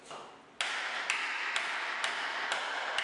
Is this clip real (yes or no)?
yes